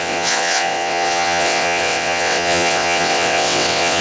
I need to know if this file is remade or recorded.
remade